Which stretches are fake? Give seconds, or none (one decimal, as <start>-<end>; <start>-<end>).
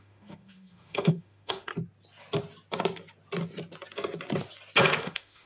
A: 0.0-1.7; 5.0-5.5